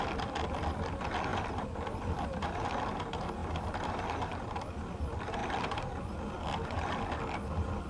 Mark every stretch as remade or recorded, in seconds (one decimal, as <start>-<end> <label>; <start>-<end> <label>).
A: 0.0-1.3 recorded; 1.3-2.7 remade; 2.7-3.4 recorded; 3.4-4.6 remade; 4.6-5.4 recorded; 5.4-6.2 remade; 6.2-7.9 recorded